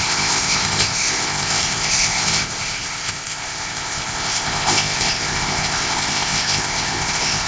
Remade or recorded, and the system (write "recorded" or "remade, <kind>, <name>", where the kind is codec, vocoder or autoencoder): remade, codec, ZipCodec